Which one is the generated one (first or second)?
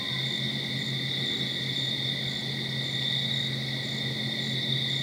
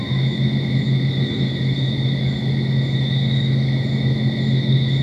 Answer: second